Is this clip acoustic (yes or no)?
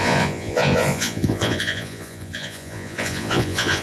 no